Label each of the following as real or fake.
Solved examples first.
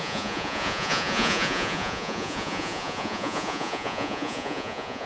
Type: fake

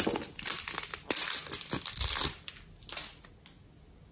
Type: real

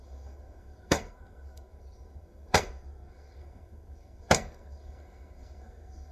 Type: fake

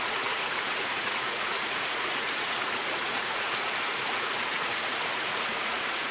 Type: fake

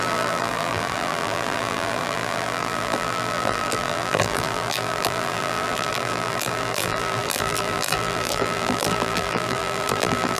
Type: fake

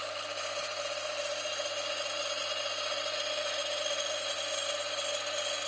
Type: real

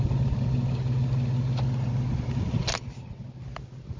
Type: real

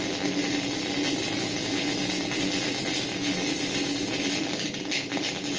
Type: real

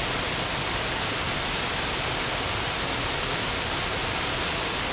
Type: real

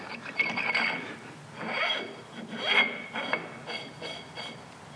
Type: real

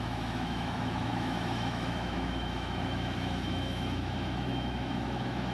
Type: fake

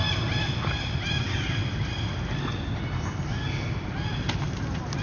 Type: real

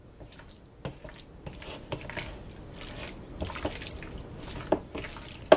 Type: real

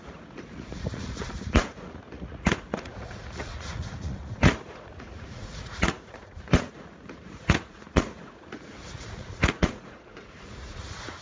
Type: fake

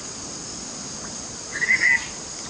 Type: real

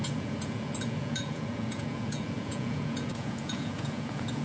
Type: fake